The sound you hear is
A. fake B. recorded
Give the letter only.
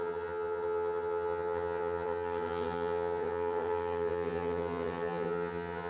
A